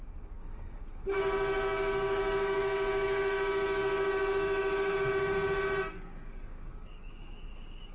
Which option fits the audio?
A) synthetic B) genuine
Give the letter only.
A